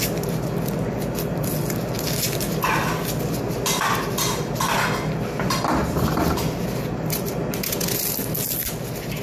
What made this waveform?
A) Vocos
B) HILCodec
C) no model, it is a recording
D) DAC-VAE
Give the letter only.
C